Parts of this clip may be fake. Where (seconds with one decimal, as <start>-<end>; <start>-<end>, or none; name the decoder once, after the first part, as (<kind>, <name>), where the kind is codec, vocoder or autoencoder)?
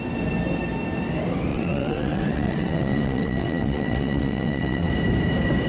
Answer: 1.5-4.9 (vocoder, WaveNeXt)